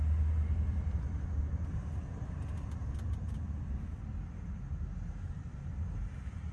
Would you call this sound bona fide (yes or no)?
yes